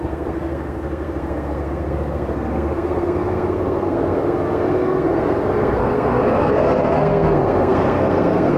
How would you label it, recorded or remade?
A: remade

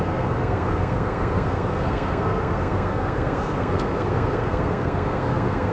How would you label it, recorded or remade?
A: remade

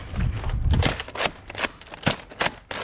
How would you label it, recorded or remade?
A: recorded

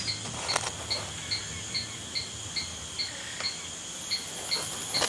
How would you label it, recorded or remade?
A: recorded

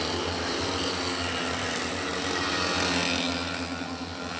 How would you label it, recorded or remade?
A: recorded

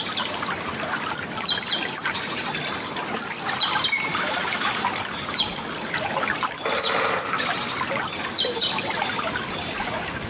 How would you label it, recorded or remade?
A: recorded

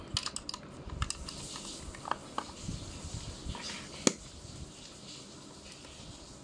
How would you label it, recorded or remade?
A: recorded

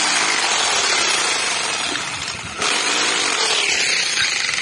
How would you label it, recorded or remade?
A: recorded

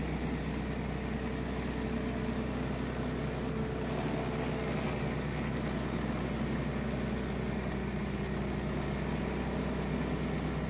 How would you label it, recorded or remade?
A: recorded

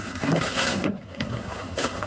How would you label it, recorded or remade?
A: remade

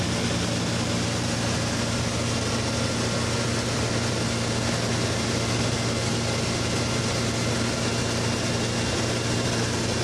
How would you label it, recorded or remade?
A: recorded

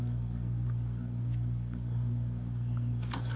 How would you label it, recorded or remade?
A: remade